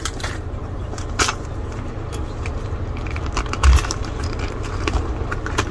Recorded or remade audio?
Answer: remade